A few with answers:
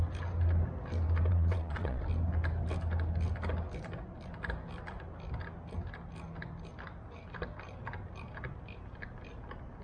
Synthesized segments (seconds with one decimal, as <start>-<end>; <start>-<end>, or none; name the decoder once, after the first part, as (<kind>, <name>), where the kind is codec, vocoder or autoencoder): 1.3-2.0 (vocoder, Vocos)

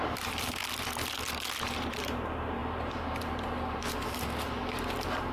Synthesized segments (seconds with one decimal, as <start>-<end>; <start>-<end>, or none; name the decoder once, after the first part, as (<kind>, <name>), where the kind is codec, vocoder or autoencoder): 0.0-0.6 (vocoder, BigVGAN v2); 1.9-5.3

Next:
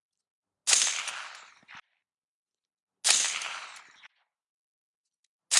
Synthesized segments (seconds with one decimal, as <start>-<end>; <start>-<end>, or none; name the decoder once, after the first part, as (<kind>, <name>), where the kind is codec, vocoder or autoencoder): none

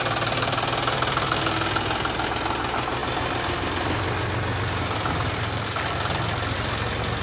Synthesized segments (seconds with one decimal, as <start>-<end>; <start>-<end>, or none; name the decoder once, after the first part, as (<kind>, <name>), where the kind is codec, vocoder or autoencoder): none

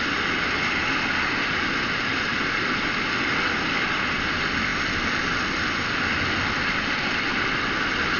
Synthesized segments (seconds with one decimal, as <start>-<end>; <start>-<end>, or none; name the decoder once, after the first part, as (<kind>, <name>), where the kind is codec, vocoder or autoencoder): none